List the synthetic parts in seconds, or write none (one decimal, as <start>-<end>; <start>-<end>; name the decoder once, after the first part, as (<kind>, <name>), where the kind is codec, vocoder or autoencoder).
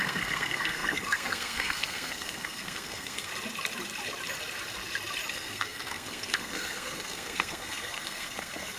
0.0-3.3 (codec, SNAC); 5.3-8.8